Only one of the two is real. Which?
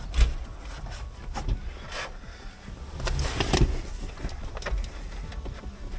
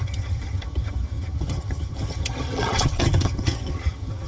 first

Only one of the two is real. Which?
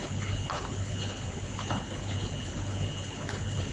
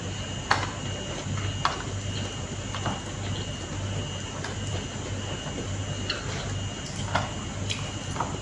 second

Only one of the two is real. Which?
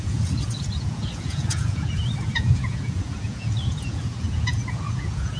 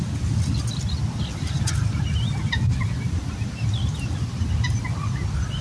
second